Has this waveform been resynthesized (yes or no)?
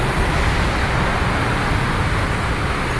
no